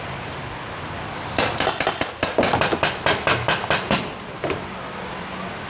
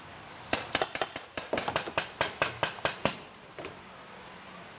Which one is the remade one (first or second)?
second